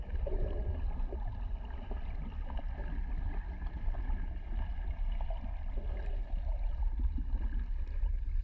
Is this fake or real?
real